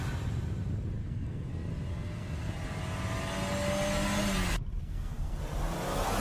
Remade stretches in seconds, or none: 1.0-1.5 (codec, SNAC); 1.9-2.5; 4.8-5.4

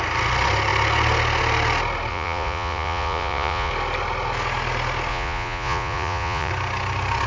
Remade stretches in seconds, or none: 2.1-3.7 (vocoder, Vocos); 5.1-6.5